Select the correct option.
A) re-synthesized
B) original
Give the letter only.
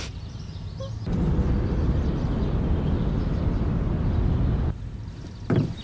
B